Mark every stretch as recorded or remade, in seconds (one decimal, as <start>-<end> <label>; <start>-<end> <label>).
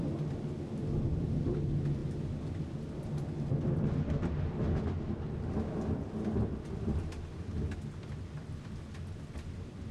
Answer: 0.0-9.9 recorded